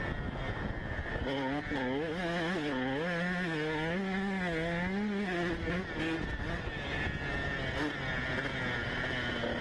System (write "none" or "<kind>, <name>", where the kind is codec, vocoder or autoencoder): none